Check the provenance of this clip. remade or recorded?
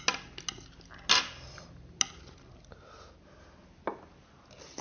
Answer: recorded